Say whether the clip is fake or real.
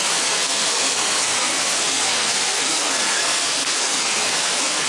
fake